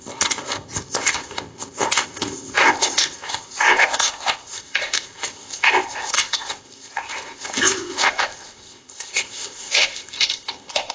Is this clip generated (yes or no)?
yes